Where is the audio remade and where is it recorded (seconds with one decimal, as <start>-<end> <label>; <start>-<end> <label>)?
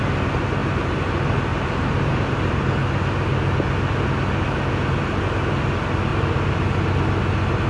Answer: 0.0-1.5 recorded; 1.5-2.6 remade; 2.6-6.1 recorded; 6.1-6.6 remade; 6.6-7.7 recorded